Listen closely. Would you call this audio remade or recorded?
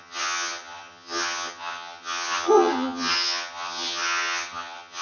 remade